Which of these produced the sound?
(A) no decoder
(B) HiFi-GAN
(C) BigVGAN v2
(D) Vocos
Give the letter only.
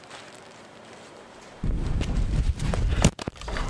C